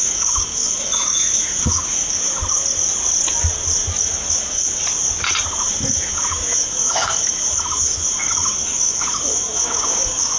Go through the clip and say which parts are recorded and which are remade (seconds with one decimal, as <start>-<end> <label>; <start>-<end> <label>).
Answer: 0.0-2.4 remade; 2.4-4.0 recorded; 4.0-4.8 remade; 4.8-5.9 recorded; 5.9-10.4 remade